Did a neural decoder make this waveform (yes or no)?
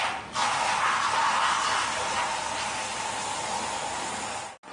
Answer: no